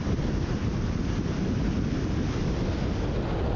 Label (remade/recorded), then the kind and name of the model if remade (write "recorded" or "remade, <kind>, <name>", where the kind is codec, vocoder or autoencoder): recorded